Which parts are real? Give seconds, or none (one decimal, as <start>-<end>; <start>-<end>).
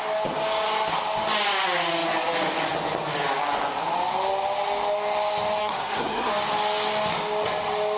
0.0-5.6; 6.3-8.0